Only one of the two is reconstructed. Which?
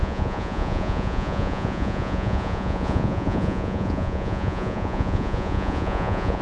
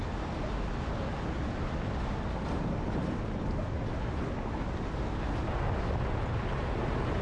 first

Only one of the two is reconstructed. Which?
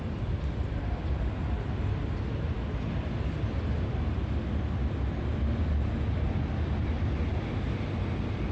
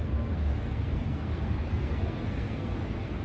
second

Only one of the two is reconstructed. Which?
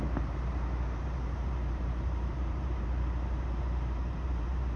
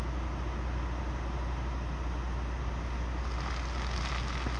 first